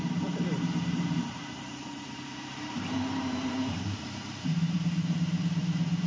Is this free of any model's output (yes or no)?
no